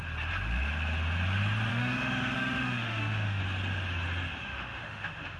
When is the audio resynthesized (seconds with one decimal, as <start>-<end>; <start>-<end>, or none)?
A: 1.7-3.4; 4.4-5.4